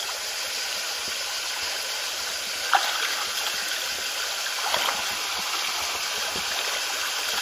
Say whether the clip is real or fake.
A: real